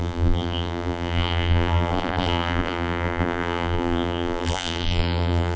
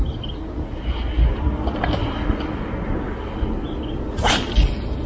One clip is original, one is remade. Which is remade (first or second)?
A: first